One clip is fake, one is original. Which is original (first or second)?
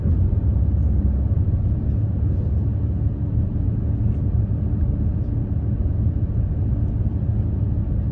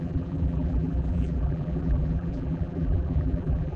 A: first